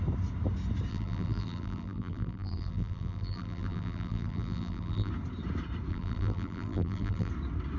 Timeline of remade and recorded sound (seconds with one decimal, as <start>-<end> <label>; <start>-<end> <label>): 0.0-0.9 recorded; 0.9-5.1 remade; 5.1-5.9 recorded; 5.9-7.3 remade; 7.3-7.8 recorded